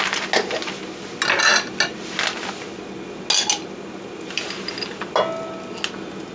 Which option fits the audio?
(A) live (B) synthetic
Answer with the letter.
A